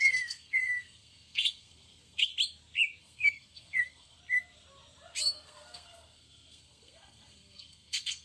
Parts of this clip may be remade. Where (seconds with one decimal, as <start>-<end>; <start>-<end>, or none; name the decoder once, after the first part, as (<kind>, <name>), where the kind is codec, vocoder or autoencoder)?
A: 0.0-2.3 (codec, SNAC); 3.0-4.2; 5.2-8.2